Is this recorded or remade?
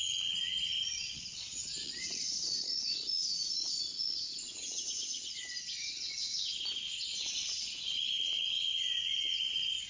remade